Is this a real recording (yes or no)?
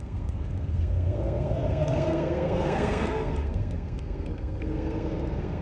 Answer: no